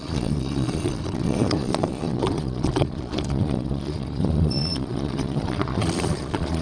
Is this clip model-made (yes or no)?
yes